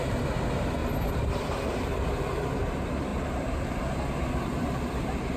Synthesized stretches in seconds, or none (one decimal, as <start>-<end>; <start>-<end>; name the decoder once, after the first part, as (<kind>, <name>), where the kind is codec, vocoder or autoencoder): 0.8-2.0 (vocoder, BigVGAN v2); 3.1-3.8